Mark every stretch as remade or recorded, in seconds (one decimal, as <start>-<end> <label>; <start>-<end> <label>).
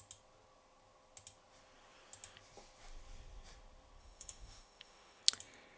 0.0-4.0 recorded; 4.0-5.2 remade; 5.2-5.8 recorded